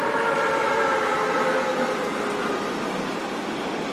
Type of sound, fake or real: fake